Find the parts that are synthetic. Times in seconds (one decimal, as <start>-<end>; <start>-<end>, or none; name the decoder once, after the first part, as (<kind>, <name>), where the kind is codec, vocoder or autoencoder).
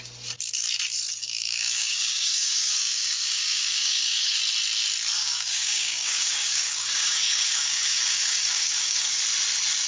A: 1.2-4.4 (codec, DAC); 5.2-9.2